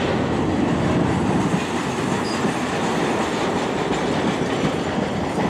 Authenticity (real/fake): real